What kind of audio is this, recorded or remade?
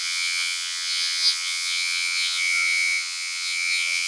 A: remade